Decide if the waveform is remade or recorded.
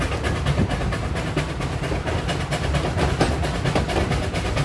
recorded